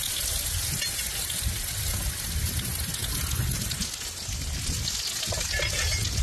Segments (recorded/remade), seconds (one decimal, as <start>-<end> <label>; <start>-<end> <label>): 0.0-6.2 recorded

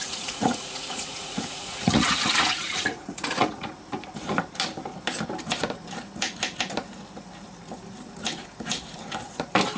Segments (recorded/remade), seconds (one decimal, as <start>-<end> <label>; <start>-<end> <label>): 0.0-3.7 remade; 3.7-9.8 recorded

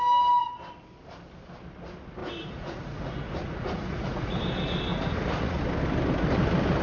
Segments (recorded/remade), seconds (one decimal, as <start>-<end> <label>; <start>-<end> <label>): 0.0-2.2 recorded; 2.2-4.4 remade; 4.4-4.9 recorded; 4.9-5.6 remade; 5.6-6.8 recorded